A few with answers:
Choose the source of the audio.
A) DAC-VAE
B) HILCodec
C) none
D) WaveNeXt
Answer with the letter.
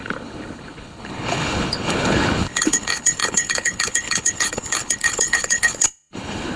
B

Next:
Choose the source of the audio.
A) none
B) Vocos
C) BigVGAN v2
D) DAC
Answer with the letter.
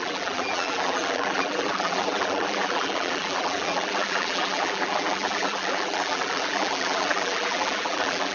C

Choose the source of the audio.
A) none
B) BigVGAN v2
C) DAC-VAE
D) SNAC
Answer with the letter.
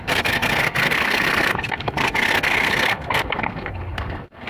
D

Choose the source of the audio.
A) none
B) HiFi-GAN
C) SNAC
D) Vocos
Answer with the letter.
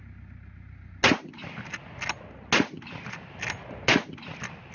A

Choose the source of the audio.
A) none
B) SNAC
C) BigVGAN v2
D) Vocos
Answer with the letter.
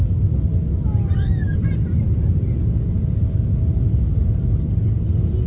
A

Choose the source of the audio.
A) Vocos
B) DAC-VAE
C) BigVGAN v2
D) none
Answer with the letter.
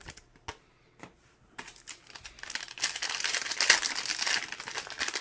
D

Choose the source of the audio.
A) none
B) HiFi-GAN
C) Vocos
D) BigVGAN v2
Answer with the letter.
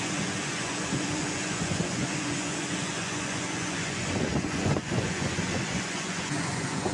C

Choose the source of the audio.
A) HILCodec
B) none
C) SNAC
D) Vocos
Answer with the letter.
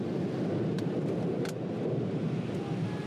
B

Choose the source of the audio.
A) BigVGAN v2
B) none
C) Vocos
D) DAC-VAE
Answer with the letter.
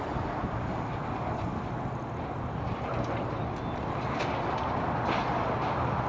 B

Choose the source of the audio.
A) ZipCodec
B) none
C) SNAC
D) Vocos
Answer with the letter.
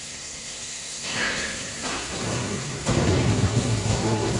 C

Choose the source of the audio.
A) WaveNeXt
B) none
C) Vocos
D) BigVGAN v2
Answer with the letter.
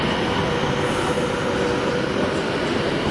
B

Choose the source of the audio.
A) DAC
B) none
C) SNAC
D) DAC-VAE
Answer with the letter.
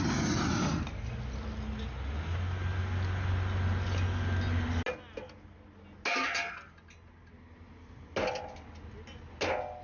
B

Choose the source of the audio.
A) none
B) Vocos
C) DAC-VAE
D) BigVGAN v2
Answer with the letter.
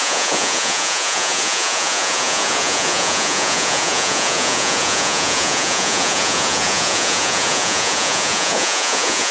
B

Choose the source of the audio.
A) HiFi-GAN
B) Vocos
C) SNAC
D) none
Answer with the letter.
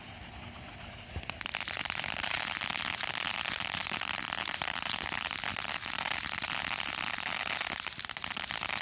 D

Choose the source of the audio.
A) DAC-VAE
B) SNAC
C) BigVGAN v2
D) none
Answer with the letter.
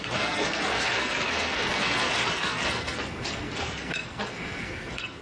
B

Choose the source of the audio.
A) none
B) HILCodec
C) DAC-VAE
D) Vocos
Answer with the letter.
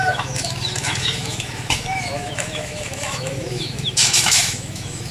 C